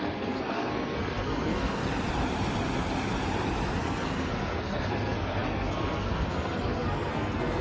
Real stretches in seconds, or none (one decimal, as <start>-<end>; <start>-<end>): 1.8-3.8

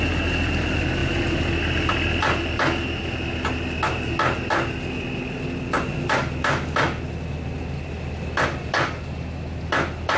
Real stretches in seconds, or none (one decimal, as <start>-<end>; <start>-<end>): 0.0-10.2

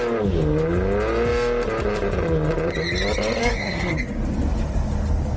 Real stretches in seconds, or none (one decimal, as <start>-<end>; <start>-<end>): 0.0-3.4; 3.9-5.4

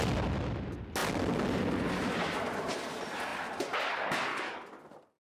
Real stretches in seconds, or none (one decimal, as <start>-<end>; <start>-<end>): 0.0-4.3; 4.8-5.4

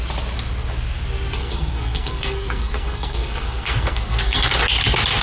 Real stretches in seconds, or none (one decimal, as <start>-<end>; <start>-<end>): 0.0-1.4; 4.5-5.2

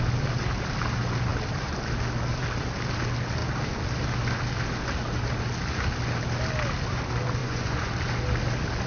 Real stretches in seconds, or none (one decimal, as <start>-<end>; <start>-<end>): 0.0-7.4; 7.9-8.9